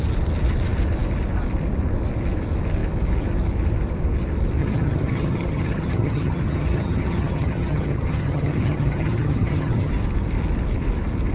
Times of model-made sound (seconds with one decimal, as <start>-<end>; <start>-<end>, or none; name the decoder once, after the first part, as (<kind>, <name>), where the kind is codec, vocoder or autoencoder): 4.6-9.9 (vocoder, HiFi-GAN)